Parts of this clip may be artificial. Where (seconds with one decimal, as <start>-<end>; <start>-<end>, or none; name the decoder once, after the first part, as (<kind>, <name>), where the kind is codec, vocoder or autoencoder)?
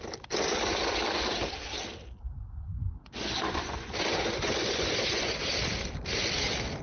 2.4-5.4 (vocoder, Vocos)